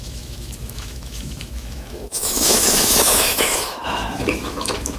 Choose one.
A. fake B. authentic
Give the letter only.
A